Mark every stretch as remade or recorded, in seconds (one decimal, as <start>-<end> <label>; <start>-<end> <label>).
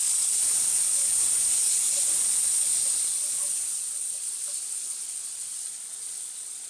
0.0-6.7 recorded